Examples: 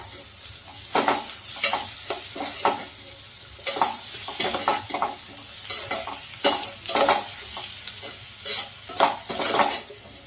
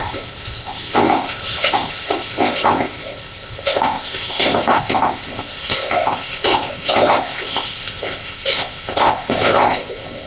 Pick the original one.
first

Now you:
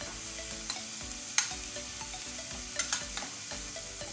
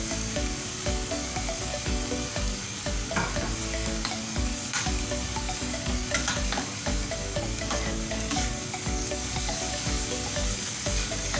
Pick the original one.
first